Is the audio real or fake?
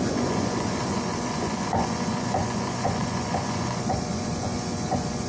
fake